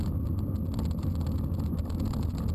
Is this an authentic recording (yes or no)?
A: yes